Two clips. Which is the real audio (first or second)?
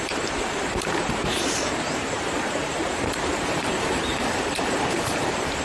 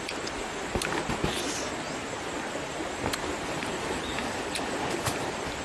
second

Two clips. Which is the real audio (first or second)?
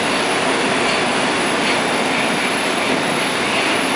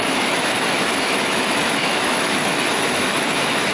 first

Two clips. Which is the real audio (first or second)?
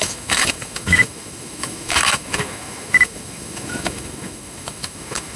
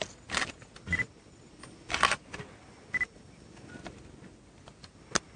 second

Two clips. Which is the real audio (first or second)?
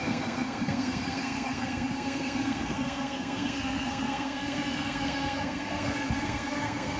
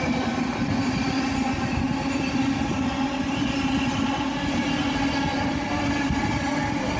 second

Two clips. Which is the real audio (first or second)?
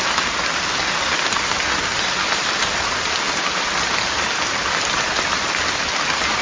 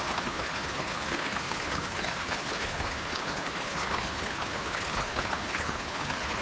first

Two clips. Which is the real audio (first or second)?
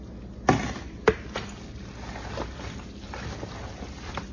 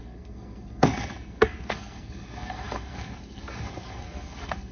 first